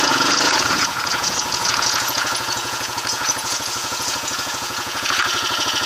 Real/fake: fake